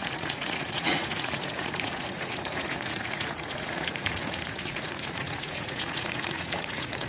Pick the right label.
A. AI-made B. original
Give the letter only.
A